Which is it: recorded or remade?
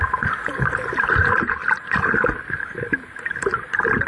recorded